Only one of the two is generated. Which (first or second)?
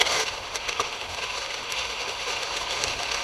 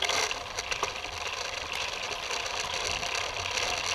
first